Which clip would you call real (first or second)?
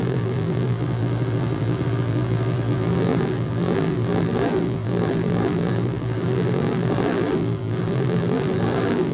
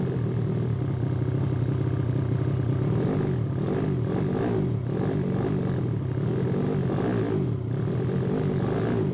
second